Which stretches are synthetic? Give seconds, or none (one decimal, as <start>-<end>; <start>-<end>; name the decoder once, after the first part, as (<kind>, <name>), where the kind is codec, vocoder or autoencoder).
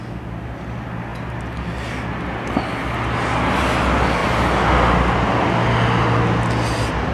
none